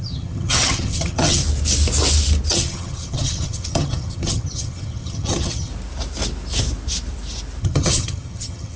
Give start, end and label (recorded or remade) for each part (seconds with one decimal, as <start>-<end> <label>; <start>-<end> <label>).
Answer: 0.0-1.4 remade; 1.4-2.5 recorded; 2.5-5.7 remade; 5.7-7.6 recorded; 7.6-8.8 remade